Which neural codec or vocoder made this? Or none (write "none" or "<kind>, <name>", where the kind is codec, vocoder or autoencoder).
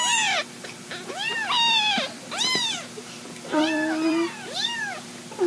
vocoder, BigVGAN v2